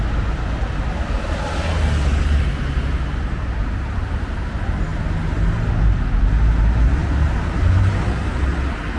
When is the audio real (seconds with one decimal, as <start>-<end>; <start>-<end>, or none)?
0.0-9.0